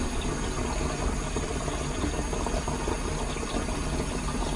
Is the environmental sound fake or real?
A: real